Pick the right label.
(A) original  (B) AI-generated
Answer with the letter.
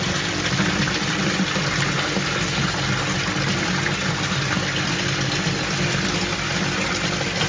A